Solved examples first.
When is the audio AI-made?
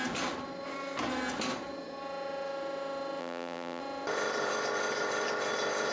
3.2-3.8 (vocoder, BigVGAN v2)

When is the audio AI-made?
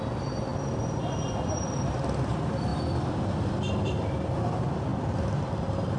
0.5-1.7 (vocoder, BigVGAN v2); 2.7-4.3; 4.9-6.0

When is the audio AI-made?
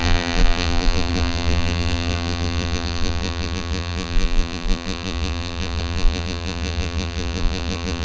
0.0-8.0 (vocoder, BigVGAN v2)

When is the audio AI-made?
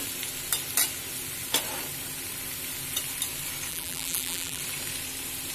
3.7-4.6 (vocoder, BigVGAN v2)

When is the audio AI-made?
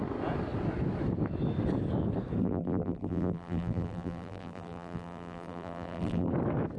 2.4-6.3 (vocoder, BigVGAN v2)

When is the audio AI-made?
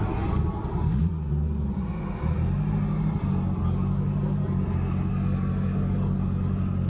none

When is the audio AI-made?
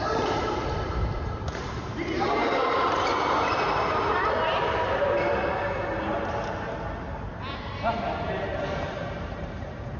0.0-3.1 (vocoder, BigVGAN v2); 8.0-10.0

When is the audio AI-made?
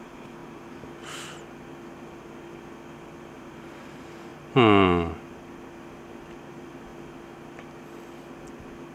0.0-0.4 (vocoder, BigVGAN v2); 3.2-4.3; 6.5-6.9